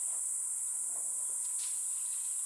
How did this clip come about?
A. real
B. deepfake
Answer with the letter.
A